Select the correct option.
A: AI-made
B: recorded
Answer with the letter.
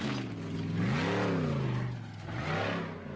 B